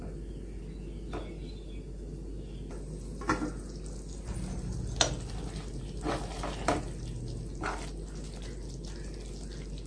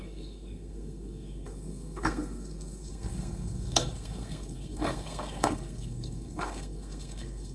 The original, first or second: first